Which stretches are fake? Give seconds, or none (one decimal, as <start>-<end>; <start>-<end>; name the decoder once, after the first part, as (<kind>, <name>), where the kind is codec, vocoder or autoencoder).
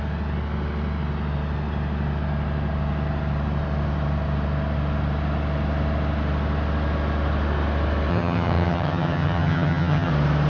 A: 8.1-10.1 (vocoder, HiFi-GAN)